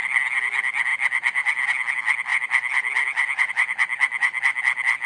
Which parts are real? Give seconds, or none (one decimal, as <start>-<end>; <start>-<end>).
0.0-5.1